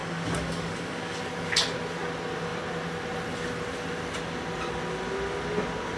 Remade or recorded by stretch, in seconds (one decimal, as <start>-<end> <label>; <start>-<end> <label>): 0.0-1.2 remade; 1.2-6.0 recorded